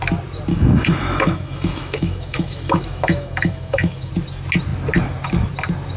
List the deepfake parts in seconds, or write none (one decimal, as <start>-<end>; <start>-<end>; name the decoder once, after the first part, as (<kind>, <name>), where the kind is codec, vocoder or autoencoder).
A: 0.5-4.1 (autoencoder, DAC-VAE)